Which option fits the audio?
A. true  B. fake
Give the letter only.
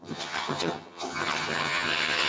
B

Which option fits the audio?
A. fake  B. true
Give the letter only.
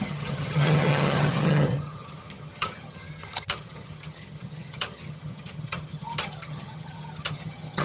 A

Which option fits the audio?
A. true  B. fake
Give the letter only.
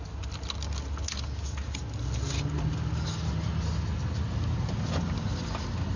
A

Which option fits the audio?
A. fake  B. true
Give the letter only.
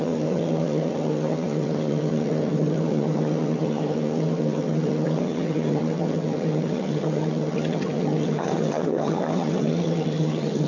A